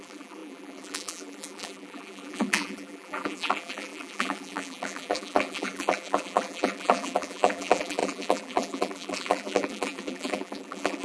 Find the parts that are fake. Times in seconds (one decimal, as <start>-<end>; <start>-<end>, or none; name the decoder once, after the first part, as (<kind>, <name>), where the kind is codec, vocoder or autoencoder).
0.0-11.0 (vocoder, BigVGAN v2)